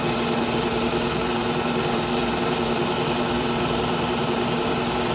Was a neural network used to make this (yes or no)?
yes